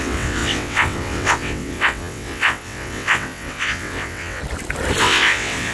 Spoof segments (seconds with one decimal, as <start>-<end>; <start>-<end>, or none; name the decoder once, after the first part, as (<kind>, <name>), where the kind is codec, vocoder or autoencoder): 0.0-4.4 (vocoder, WaveNeXt); 5.0-5.7